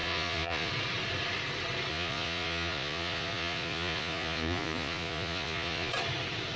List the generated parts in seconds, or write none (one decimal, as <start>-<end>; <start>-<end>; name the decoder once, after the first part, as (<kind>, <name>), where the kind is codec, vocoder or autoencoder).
0.0-0.7 (vocoder, Vocos); 1.9-5.9